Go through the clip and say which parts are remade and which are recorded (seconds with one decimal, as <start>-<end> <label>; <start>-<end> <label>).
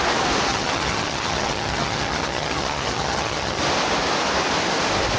0.0-0.5 recorded; 0.5-3.6 remade; 3.6-5.2 recorded